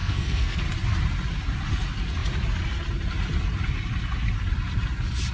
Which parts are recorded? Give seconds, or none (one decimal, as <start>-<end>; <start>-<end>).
0.6-5.3